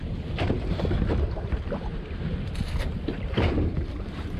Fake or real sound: fake